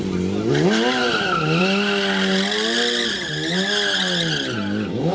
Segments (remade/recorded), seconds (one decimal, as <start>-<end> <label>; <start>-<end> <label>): 0.0-5.1 recorded